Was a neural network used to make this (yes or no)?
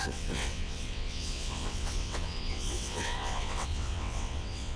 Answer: yes